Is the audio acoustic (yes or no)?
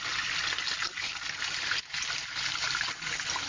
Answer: yes